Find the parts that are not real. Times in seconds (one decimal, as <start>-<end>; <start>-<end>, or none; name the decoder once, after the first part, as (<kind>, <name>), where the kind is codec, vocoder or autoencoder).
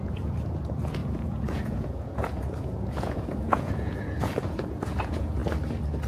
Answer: 0.0-5.4 (vocoder, Vocos)